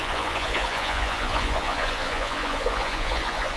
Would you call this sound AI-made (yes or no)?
yes